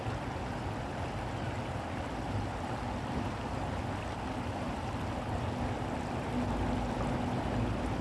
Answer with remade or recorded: recorded